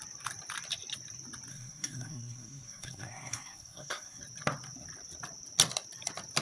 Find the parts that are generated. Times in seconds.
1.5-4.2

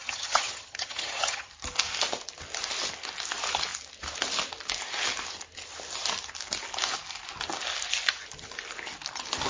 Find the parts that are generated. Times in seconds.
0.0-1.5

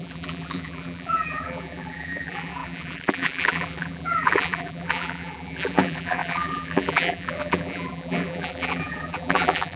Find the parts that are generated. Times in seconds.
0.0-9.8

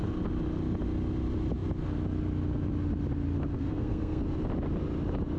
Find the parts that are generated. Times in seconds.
3.5-4.2

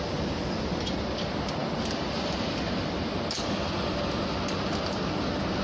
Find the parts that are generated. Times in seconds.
none

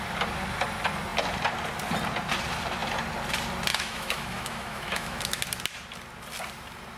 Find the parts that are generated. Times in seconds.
3.7-5.4

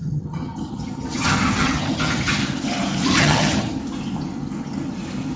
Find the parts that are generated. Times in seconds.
0.0-2.4; 3.2-3.8

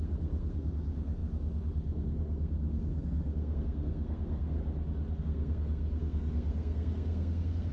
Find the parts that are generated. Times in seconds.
0.0-4.6; 5.2-7.7